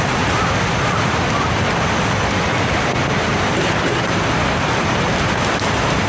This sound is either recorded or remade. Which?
recorded